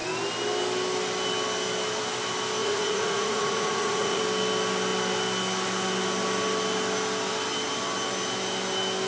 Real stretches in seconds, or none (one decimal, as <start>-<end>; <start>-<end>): 0.0-2.6; 4.2-9.1